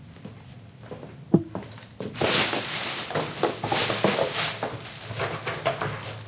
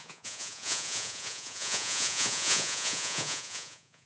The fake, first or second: second